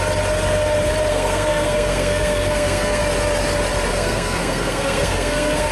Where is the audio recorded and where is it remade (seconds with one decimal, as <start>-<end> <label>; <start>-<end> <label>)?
0.0-1.1 recorded; 1.1-3.0 remade; 3.0-3.9 recorded; 3.9-5.7 remade